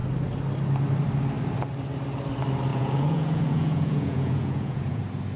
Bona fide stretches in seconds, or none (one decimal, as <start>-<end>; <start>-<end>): 0.0-2.7; 5.0-5.4